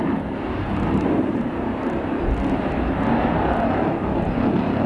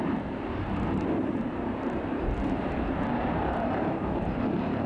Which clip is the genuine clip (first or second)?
first